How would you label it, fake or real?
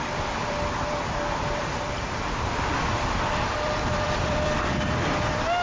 fake